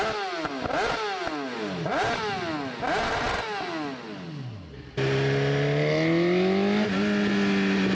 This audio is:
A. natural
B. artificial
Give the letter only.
A